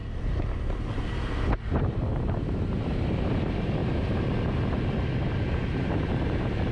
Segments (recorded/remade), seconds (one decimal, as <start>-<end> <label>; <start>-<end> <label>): 0.0-1.1 recorded; 1.1-3.8 remade; 3.8-5.3 recorded; 5.3-6.7 remade